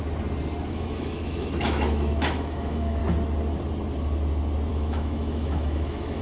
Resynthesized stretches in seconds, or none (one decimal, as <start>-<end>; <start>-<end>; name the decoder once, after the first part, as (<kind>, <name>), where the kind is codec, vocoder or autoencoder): 0.7-3.0 (autoencoder, DAC-VAE); 4.7-6.2